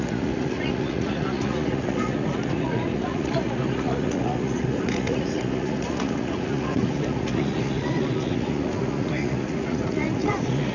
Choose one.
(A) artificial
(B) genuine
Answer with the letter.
A